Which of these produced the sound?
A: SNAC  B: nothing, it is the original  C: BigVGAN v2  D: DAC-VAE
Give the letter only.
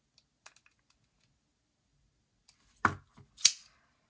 B